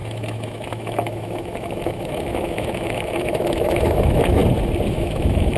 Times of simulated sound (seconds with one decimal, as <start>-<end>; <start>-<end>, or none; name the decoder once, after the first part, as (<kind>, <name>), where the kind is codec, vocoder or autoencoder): 0.0-4.4 (autoencoder, DAC-VAE); 4.9-5.6